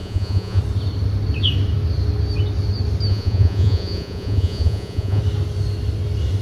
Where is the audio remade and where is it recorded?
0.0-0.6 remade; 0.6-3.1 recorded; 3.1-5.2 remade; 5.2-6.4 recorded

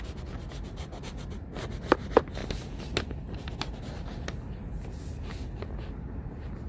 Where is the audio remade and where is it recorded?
0.0-6.7 recorded

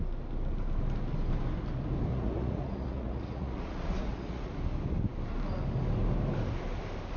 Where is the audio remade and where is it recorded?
0.0-2.1 recorded; 2.1-4.5 remade; 4.5-7.2 recorded

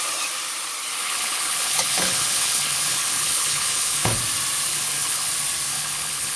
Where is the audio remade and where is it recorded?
0.0-1.0 recorded; 1.0-4.2 remade; 4.2-4.7 recorded; 4.7-5.3 remade; 5.3-5.7 recorded; 5.7-6.4 remade

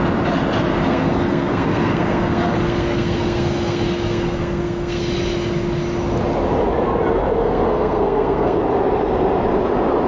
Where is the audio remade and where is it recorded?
0.0-0.9 recorded; 0.9-5.1 remade; 5.1-7.4 recorded; 7.4-8.6 remade; 8.6-10.1 recorded